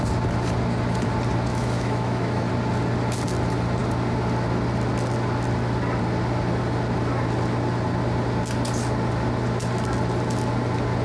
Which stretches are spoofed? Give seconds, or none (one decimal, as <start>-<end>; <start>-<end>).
1.5-2.5